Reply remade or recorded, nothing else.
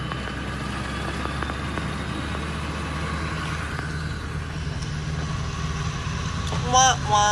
recorded